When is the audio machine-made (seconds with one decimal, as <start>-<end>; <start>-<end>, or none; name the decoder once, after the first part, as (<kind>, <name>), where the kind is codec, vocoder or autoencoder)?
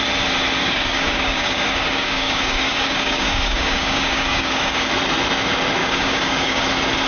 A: 0.6-4.9 (codec, DAC); 5.8-6.6